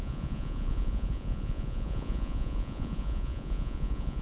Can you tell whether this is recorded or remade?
remade